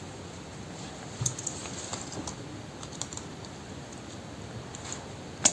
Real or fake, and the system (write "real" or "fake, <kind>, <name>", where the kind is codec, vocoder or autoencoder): real